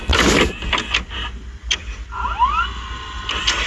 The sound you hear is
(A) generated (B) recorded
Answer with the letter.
B